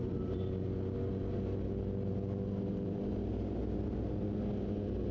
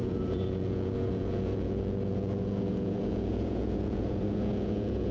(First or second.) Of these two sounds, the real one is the first